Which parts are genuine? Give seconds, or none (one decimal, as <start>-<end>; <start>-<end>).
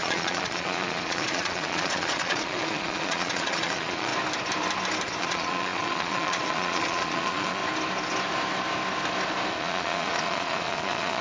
4.1-5.2; 7.6-9.5